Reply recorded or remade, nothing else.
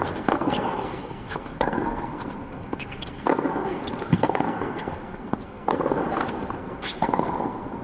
remade